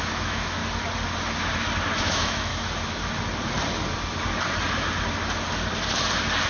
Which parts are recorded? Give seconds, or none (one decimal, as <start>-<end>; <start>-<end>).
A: 0.6-2.0; 2.5-6.5